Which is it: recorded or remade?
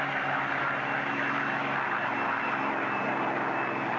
recorded